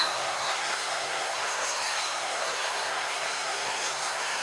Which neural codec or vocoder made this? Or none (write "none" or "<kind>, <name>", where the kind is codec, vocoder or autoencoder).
codec, SNAC